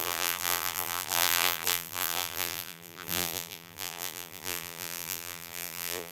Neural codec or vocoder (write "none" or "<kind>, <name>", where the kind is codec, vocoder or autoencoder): vocoder, BigVGAN v2